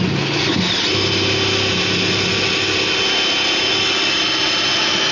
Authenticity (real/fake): real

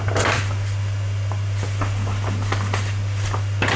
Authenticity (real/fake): real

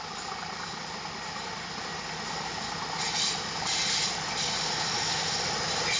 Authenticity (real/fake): real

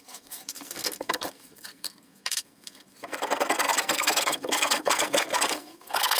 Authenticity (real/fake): fake